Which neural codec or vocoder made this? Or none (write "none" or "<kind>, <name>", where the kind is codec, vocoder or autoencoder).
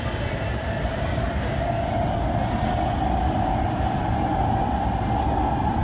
none